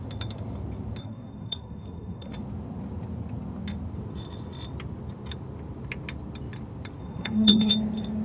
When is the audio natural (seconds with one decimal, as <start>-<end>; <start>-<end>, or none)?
0.0-1.0; 2.3-7.0; 7.7-8.2